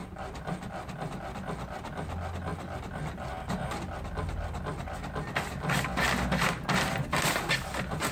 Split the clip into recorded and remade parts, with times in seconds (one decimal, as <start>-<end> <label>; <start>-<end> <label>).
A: 0.0-8.1 recorded